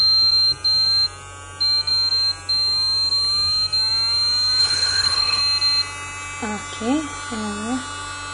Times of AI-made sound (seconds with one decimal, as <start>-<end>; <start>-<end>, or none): 4.6-5.4